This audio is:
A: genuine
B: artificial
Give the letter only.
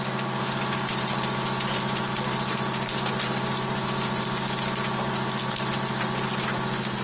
A